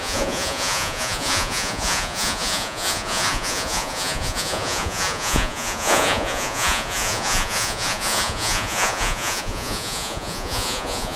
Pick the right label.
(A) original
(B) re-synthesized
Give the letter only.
B